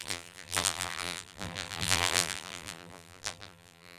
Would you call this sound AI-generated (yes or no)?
yes